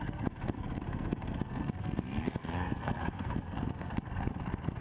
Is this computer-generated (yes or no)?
yes